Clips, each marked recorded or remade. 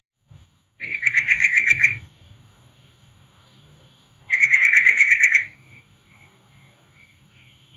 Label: remade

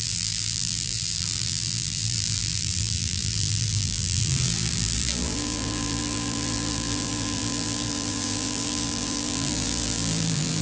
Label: remade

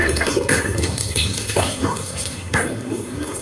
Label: remade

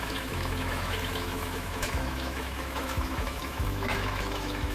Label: remade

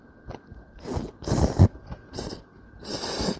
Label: recorded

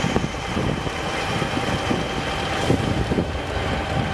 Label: recorded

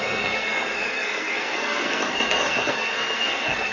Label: remade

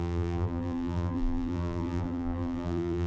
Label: remade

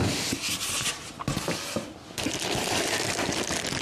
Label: recorded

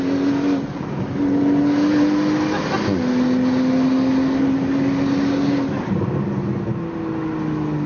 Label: recorded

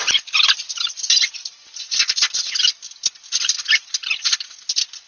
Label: recorded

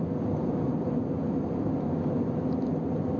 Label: recorded